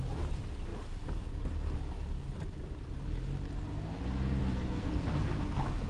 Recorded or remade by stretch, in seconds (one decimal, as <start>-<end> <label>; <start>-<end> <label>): 0.0-4.4 recorded; 4.4-5.4 remade; 5.4-5.9 recorded

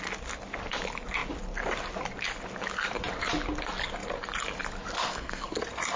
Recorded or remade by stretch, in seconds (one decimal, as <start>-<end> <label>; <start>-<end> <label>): 0.0-5.1 recorded; 5.1-5.6 remade; 5.6-6.0 recorded

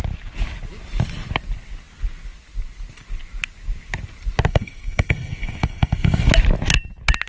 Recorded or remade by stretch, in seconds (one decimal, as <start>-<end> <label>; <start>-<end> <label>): 0.0-4.5 recorded; 4.5-6.3 remade; 6.3-7.3 recorded

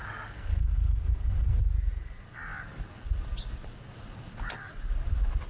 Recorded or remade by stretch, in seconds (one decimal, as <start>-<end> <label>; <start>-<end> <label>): 0.0-1.6 remade; 1.6-5.5 recorded

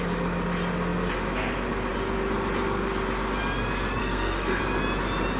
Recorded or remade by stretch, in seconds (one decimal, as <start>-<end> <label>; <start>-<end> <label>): 0.0-4.0 recorded; 4.0-4.6 remade; 4.6-5.4 recorded